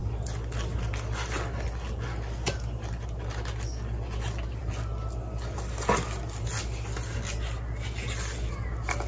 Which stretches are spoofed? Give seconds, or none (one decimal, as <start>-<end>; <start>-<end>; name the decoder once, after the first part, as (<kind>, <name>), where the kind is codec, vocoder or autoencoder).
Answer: none